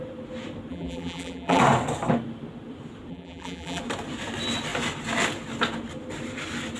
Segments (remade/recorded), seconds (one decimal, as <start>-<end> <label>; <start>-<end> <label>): 0.0-0.7 recorded; 0.7-1.6 remade; 1.6-3.1 recorded; 3.1-3.8 remade; 3.8-6.8 recorded